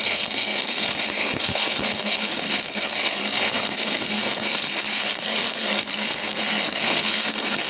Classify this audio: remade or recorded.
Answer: remade